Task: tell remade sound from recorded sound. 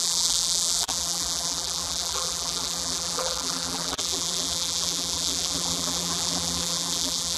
remade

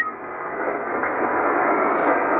remade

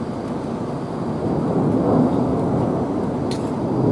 recorded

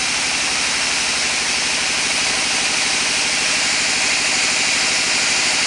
recorded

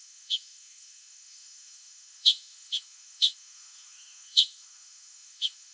remade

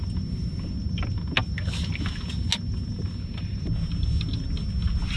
recorded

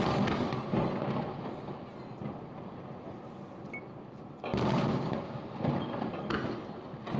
recorded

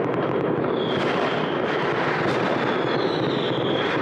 recorded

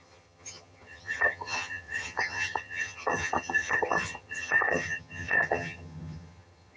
remade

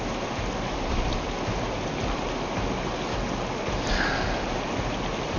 recorded